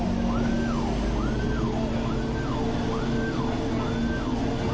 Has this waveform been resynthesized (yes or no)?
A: no